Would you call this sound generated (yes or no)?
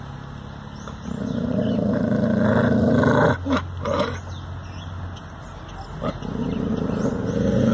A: no